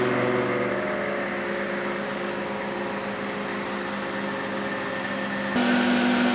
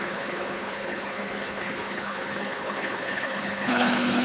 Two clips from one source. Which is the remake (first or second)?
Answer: second